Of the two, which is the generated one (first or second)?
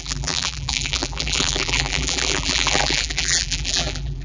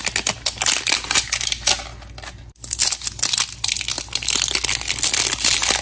first